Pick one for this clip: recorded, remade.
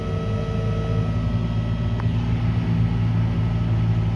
recorded